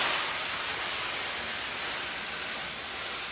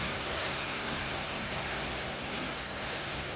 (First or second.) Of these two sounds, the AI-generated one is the second